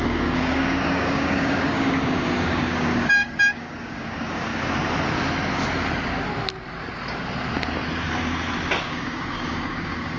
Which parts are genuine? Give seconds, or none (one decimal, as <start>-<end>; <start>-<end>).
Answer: 4.5-8.8